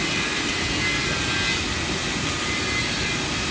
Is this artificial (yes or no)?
no